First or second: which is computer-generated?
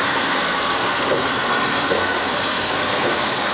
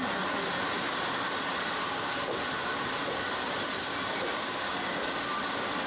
first